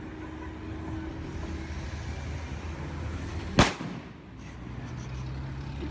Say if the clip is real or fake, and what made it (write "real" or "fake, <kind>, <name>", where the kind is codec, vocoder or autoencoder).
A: real